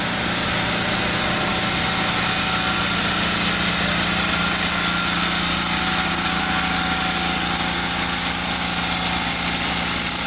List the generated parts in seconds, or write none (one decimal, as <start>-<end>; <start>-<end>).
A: none